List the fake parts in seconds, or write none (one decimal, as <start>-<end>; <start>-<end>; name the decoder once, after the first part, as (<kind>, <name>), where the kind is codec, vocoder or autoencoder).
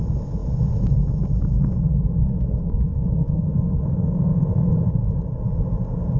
2.2-4.7 (codec, SNAC)